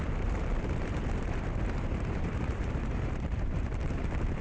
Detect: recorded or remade remade